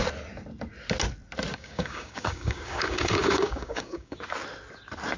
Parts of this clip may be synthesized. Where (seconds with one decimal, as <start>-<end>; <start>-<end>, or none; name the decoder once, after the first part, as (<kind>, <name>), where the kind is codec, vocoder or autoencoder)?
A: 1.5-4.2 (codec, DAC)